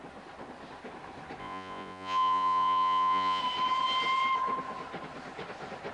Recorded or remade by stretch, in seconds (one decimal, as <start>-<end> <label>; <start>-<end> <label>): 0.0-1.4 recorded; 1.4-3.4 remade; 3.4-5.9 recorded